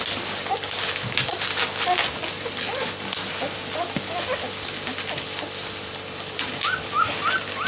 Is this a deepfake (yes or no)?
no